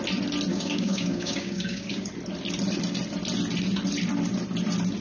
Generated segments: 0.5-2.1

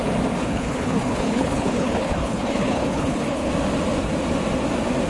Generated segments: 0.4-3.5

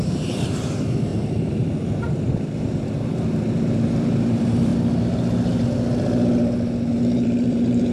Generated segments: 0.0-4.7; 6.9-7.9

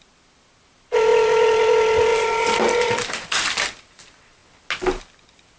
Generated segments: 2.1-3.5

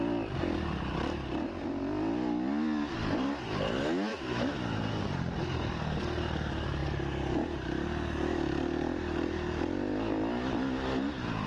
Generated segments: none

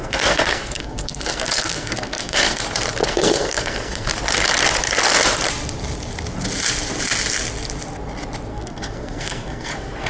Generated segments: 0.0-2.6; 3.0-4.1; 8.5-10.1

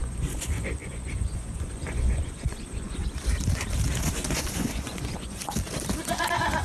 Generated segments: 0.0-3.0; 4.1-5.4; 6.1-6.6

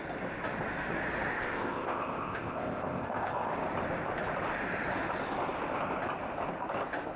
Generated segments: 1.3-3.5